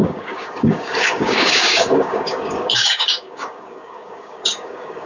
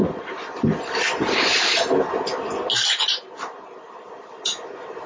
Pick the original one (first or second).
second